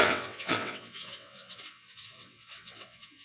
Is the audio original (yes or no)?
no